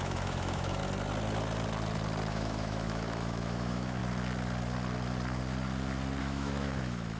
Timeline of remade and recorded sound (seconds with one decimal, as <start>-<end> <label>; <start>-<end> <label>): 0.0-0.8 remade; 0.8-2.3 recorded; 2.3-4.0 remade; 4.0-6.2 recorded; 6.2-7.2 remade